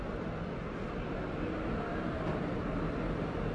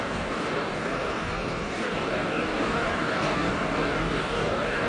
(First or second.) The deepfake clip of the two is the second